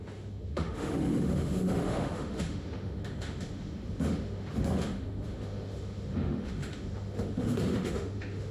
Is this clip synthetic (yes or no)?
yes